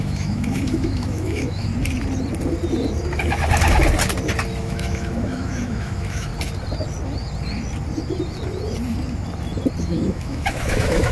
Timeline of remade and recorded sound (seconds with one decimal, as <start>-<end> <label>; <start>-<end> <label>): 0.0-1.7 remade; 1.7-4.6 recorded; 4.6-6.3 remade; 6.3-9.8 recorded; 9.8-11.1 remade

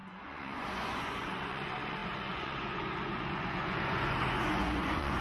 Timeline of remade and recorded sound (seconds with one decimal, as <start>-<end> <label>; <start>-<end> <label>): 0.0-5.2 remade